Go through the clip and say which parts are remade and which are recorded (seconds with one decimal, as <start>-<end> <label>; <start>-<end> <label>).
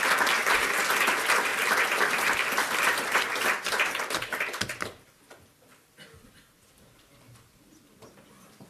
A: 0.0-0.4 recorded; 0.4-1.0 remade; 1.0-1.5 recorded; 1.5-4.8 remade; 4.8-8.7 recorded